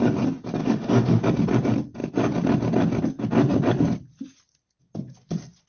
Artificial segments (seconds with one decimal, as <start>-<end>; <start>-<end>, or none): 0.6-1.2